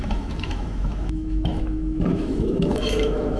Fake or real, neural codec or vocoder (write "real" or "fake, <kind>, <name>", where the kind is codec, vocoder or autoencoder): fake, autoencoder, DAC-VAE